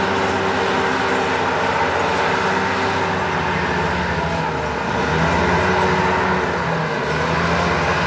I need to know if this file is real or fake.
real